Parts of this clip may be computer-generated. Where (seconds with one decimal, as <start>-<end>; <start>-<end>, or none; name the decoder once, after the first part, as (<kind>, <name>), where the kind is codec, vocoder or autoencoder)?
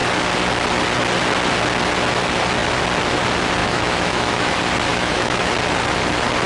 3.6-4.5 (autoencoder, DAC-VAE); 4.9-5.5